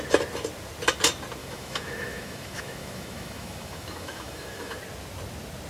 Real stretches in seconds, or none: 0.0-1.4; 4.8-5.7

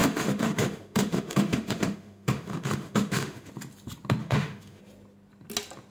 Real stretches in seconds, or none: 3.5-4.2; 4.8-5.9

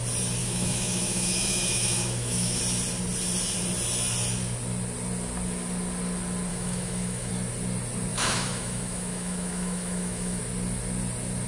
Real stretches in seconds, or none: 0.0-0.4; 2.6-6.5; 7.3-8.1; 10.4-11.5

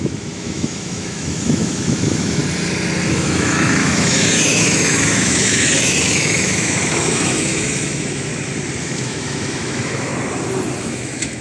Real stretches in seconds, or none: 2.4-3.1; 8.3-8.8; 10.1-10.8

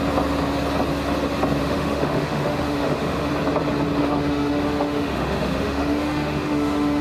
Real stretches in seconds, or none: 0.0-1.6; 3.3-4.0

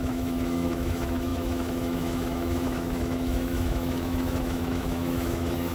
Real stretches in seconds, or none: none

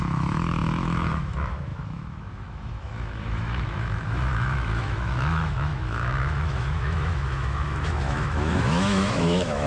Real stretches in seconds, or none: none